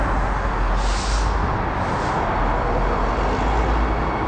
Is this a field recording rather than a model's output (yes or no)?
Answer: yes